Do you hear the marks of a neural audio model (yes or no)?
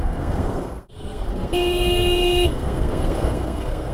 yes